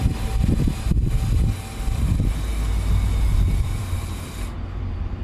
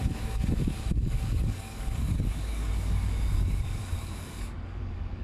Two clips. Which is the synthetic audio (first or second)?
second